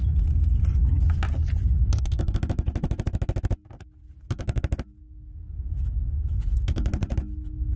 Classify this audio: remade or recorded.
recorded